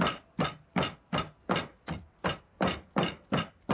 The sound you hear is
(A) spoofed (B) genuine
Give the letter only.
B